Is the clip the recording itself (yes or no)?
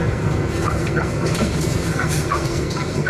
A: no